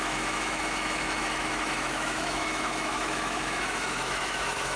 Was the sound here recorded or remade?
remade